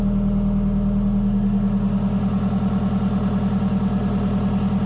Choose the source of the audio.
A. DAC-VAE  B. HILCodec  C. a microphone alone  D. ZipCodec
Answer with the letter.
C